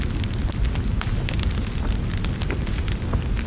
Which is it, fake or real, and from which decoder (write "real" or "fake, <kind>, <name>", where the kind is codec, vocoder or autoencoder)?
real